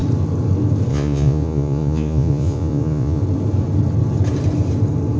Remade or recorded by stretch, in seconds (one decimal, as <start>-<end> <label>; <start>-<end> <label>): 0.0-0.9 recorded; 0.9-3.2 remade; 3.2-5.2 recorded